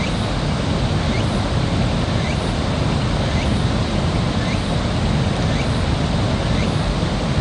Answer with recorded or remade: recorded